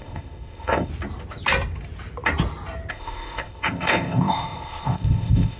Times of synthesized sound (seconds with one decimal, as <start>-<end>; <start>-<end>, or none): 0.0-0.9; 2.9-5.6